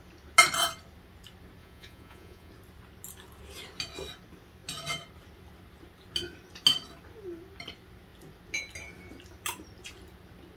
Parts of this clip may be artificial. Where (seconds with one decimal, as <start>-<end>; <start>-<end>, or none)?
1.6-2.5